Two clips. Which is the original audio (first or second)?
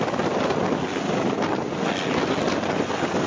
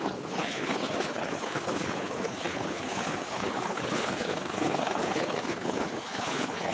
first